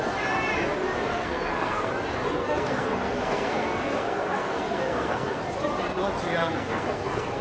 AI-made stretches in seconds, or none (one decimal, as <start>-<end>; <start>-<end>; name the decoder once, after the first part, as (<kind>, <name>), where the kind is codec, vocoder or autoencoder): 1.1-1.9 (codec, SNAC); 2.4-5.4; 6.4-7.4